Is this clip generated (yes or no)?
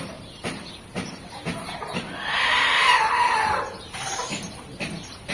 yes